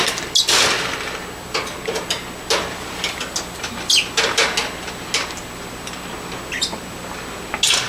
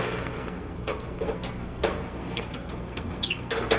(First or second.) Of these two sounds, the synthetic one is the second